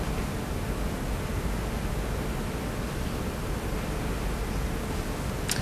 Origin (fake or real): real